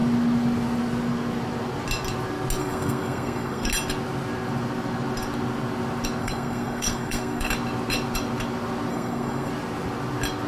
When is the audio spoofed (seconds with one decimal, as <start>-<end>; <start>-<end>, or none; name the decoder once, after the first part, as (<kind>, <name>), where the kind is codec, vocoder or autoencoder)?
2.6-3.7 (codec, SNAC); 6.2-7.5; 8.9-9.5